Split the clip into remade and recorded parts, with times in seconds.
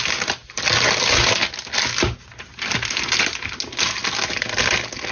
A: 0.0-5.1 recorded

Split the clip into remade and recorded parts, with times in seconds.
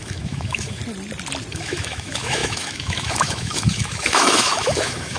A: 0.0-0.8 remade; 0.8-1.5 recorded; 1.5-5.2 remade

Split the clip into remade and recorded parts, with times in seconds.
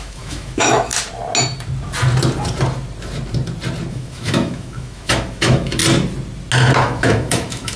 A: 0.0-0.9 remade; 0.9-3.9 recorded; 3.9-5.8 remade; 5.8-6.8 recorded; 6.8-7.8 remade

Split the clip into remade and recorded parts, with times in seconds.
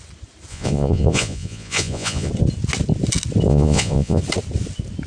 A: 0.0-0.5 recorded; 0.5-2.3 remade; 2.3-3.5 recorded; 3.5-4.2 remade; 4.2-5.1 recorded